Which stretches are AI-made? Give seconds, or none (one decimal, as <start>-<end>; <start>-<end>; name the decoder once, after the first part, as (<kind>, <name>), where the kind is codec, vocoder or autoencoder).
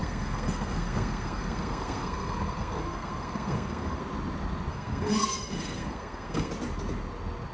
0.0-4.0 (codec, SNAC); 4.7-6.5